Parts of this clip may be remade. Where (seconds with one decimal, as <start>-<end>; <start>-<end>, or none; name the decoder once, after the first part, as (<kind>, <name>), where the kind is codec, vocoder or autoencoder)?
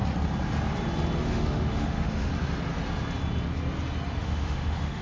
1.2-2.3 (autoencoder, DAC-VAE); 4.2-5.0